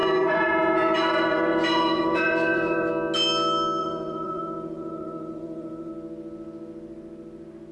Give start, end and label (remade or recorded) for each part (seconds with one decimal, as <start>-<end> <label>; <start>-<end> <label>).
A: 0.0-2.9 remade; 2.9-3.8 recorded; 3.8-5.9 remade; 5.9-7.7 recorded